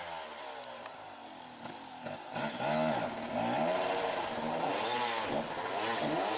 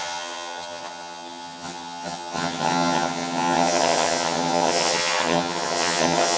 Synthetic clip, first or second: second